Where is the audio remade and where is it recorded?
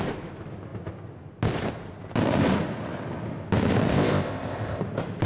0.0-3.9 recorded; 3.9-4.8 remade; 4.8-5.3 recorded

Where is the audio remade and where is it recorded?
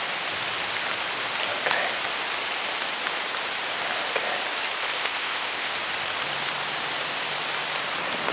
0.0-4.8 recorded; 4.8-5.7 remade; 5.7-8.3 recorded